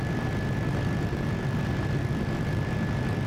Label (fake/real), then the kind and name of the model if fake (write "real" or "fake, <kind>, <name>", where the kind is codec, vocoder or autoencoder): real